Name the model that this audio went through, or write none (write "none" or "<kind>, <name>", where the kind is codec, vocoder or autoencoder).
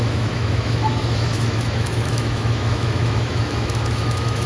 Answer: autoencoder, DAC-VAE